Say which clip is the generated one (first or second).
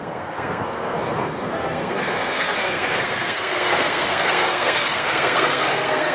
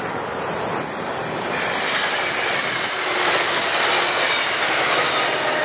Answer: first